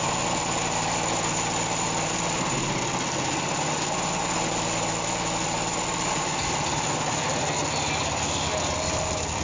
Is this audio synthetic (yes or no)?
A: no